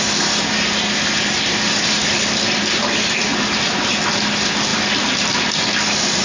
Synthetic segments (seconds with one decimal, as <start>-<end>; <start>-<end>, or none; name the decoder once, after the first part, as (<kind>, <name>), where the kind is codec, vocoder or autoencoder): none